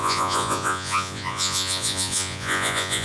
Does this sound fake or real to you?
fake